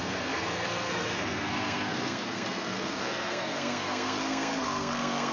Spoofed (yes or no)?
yes